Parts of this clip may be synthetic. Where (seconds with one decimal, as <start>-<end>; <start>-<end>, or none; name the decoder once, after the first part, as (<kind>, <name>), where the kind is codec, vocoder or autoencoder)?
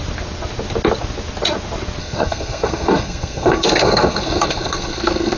2.0-5.4 (codec, SNAC)